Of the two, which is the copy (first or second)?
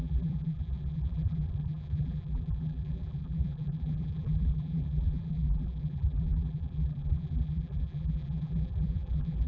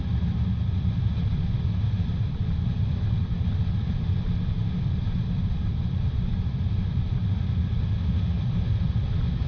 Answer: first